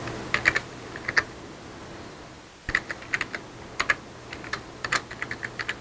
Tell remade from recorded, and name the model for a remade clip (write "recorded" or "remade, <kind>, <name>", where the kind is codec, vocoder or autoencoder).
recorded